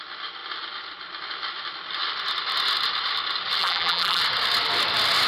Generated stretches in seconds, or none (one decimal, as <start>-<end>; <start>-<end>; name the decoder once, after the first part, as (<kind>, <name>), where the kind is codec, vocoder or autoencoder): 3.6-4.2 (vocoder, BigVGAN v2)